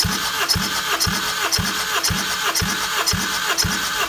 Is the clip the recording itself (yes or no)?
yes